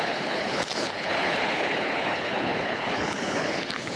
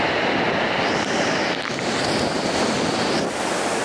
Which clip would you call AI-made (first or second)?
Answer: first